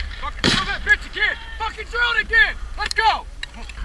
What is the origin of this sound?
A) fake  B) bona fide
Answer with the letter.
A